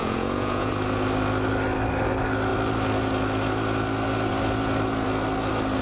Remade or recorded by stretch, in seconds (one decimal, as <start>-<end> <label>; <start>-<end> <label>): 0.0-0.7 remade; 0.7-5.8 recorded

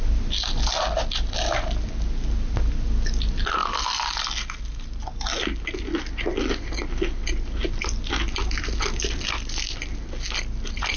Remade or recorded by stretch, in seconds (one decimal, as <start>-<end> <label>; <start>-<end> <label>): 0.0-3.6 recorded; 3.6-4.6 remade; 4.6-11.0 recorded

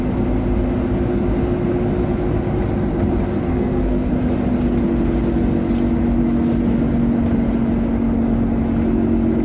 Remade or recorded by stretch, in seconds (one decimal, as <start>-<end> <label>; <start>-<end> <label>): 0.0-3.5 recorded; 3.5-4.1 remade; 4.1-9.4 recorded

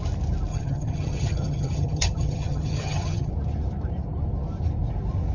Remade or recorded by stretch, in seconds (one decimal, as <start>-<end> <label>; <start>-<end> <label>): 0.0-0.5 recorded; 0.5-3.3 remade; 3.3-5.3 recorded

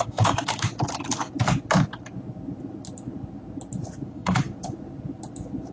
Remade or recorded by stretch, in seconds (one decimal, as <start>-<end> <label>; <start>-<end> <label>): 0.0-0.7 remade; 0.7-4.1 recorded; 4.1-4.5 remade; 4.5-5.7 recorded